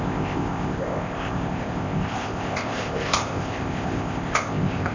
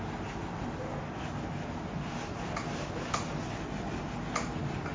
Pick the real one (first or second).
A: second